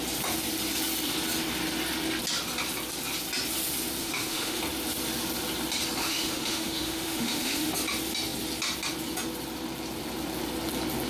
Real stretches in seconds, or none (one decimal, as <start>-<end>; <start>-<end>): 0.0-4.0; 4.6-6.0; 7.7-11.1

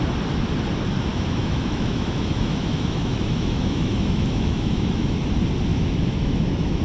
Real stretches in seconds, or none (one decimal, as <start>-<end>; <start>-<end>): 0.0-1.1; 5.2-5.7

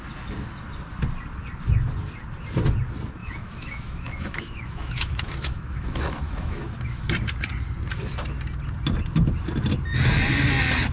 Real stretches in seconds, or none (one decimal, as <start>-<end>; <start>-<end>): 0.0-3.2; 7.1-10.9

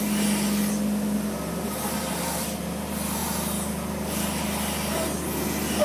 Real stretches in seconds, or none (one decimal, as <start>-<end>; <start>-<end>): 0.0-5.8

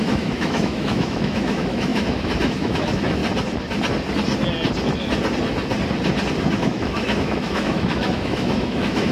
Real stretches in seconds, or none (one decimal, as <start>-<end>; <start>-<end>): 3.2-6.6